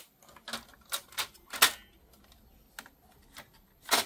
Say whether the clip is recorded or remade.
recorded